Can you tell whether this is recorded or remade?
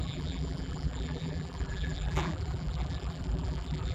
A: remade